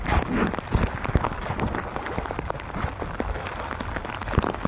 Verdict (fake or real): real